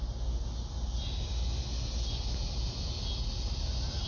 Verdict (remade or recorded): recorded